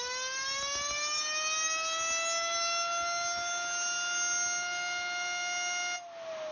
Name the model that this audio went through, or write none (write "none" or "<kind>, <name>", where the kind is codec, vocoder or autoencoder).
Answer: none